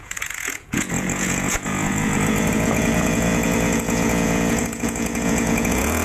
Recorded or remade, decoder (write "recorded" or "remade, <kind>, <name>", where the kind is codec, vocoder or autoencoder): remade, vocoder, Vocos